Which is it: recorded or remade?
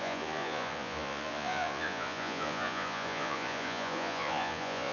remade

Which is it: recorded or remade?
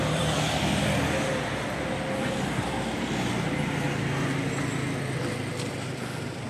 recorded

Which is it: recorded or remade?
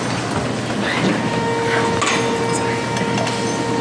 recorded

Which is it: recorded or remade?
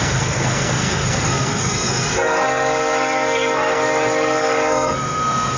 remade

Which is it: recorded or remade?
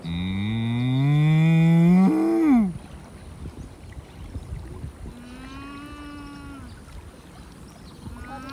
recorded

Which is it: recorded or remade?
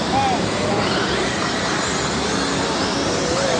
recorded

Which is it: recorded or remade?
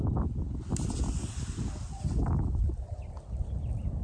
recorded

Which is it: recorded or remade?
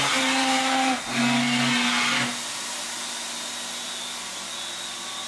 recorded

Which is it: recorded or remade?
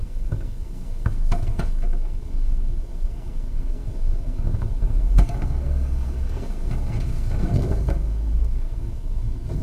remade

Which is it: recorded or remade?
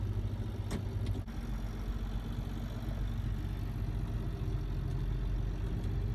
recorded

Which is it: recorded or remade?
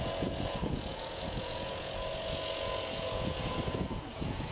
remade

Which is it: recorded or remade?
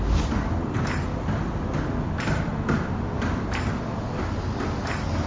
recorded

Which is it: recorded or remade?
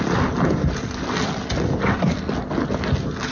recorded